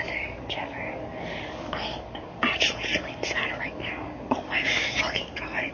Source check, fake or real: fake